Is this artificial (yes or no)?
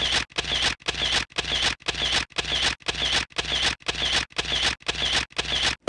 no